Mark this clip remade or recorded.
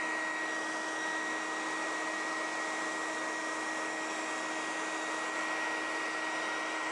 recorded